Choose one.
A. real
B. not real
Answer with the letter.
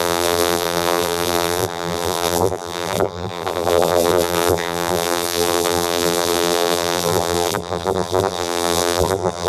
B